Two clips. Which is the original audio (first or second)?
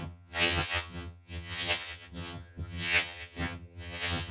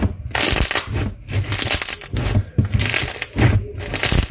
second